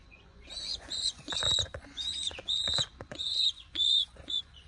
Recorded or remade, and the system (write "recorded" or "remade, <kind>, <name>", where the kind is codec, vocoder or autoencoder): remade, vocoder, Vocos